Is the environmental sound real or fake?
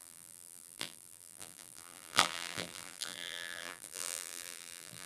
fake